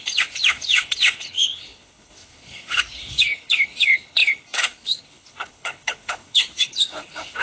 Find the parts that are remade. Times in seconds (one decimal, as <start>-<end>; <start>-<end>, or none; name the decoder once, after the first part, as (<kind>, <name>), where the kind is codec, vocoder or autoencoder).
0.0-7.4 (codec, HILCodec)